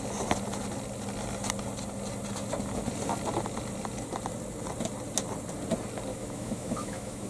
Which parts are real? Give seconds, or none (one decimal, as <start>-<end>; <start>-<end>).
0.0-6.1